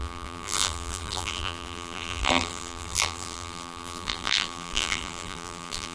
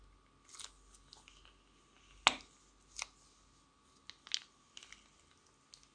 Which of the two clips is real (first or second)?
second